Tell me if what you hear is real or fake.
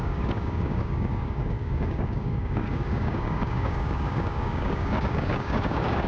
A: fake